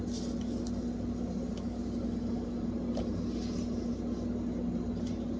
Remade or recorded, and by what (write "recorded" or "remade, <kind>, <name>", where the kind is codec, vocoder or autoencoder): recorded